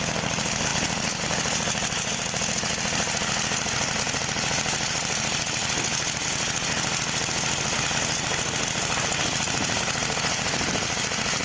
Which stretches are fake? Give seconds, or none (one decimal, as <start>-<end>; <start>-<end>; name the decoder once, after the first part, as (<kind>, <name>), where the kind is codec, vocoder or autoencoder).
none